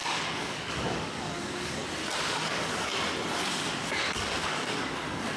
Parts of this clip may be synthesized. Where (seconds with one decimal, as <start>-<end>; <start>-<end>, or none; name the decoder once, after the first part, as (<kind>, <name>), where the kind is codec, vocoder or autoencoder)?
0.0-1.8 (codec, DAC); 2.3-2.9; 3.5-5.4